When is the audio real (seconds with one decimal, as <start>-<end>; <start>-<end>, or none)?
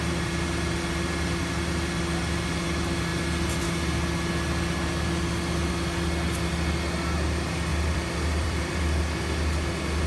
0.0-7.7; 9.0-10.1